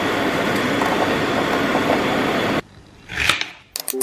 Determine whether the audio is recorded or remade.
recorded